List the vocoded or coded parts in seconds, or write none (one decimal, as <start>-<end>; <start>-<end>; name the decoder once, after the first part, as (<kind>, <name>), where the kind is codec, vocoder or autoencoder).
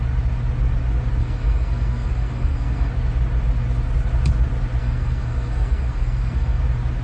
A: 1.2-2.9 (codec, SNAC); 4.8-6.6